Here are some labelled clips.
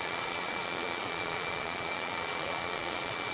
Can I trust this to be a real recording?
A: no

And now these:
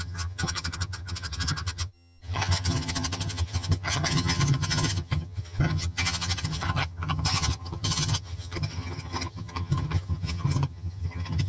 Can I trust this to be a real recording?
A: no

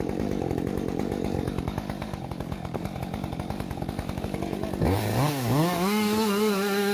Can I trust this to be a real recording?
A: no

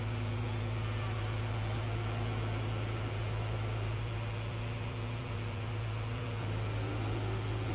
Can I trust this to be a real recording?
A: no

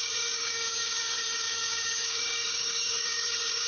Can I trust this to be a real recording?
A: no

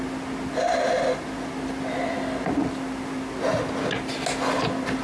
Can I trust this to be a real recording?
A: yes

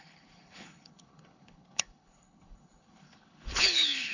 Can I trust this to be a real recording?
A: no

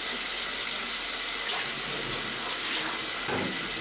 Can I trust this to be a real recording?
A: yes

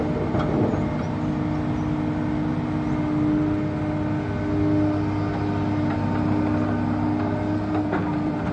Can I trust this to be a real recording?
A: yes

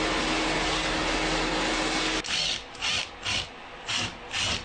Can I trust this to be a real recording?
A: yes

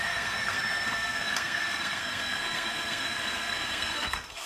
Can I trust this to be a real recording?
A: no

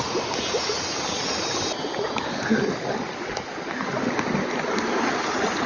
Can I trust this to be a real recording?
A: yes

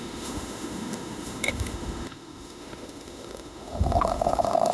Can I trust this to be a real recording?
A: no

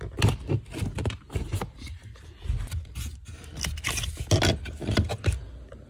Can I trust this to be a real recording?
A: yes